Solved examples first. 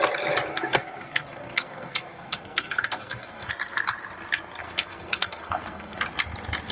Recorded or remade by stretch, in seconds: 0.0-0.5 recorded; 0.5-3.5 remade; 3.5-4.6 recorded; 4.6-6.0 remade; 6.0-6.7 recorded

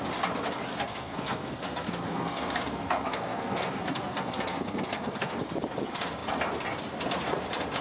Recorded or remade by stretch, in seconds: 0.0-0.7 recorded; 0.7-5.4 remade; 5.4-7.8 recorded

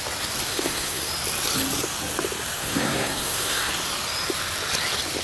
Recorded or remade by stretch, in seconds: 0.0-0.5 recorded; 0.5-1.1 remade; 1.1-2.6 recorded; 2.6-3.7 remade; 3.7-5.2 recorded

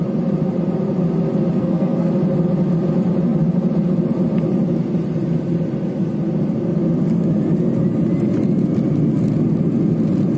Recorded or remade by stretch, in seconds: 0.0-1.6 recorded; 1.6-2.1 remade; 2.1-10.4 recorded

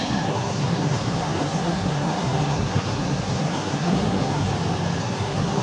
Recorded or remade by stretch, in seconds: 0.0-4.5 remade; 4.5-5.0 recorded; 5.0-5.6 remade

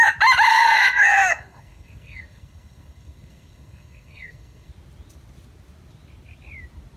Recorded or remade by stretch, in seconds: 0.0-0.5 recorded; 0.5-4.7 remade; 4.7-7.0 recorded